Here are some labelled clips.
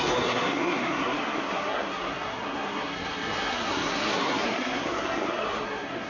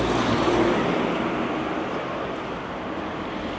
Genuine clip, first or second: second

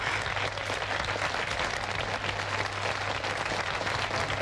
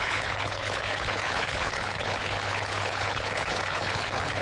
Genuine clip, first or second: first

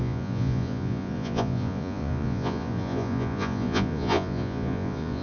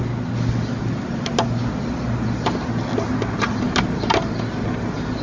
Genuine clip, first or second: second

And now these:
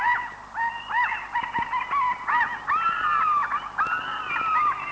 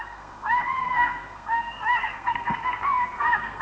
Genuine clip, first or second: first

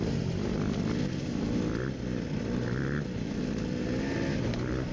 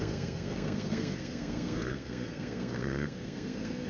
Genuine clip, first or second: first